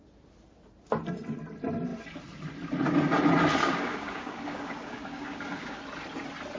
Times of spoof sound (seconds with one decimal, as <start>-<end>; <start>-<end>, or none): 3.6-5.8